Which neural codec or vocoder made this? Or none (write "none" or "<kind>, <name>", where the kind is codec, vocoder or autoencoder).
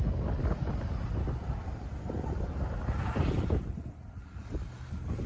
none